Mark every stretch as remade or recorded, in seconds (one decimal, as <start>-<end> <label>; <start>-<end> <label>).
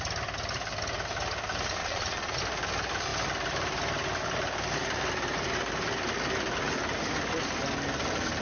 0.0-1.8 recorded; 1.8-2.4 remade; 2.4-8.4 recorded